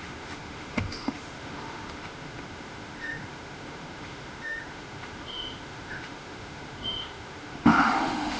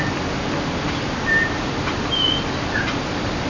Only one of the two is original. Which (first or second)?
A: second